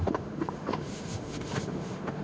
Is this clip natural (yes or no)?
no